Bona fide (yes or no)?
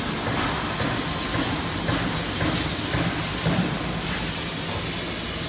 yes